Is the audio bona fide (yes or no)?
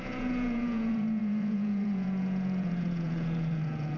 no